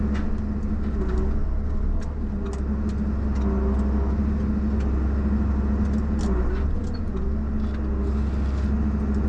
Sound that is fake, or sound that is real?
real